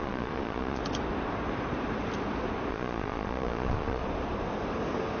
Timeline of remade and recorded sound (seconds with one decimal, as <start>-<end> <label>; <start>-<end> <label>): 0.0-0.8 remade; 0.8-2.7 recorded; 2.7-4.0 remade; 4.0-5.2 recorded